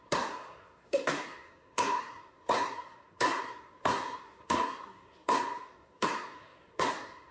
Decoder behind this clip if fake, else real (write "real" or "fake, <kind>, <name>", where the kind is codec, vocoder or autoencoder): fake, codec, SNAC